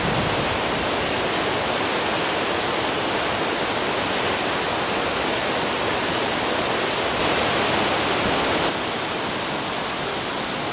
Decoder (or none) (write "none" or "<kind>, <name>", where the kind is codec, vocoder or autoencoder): none